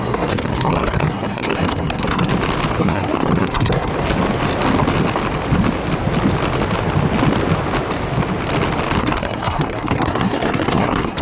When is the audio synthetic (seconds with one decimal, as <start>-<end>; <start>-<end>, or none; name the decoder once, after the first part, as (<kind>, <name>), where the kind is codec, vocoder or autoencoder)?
0.0-2.3 (codec, SNAC); 2.8-3.9; 9.0-11.2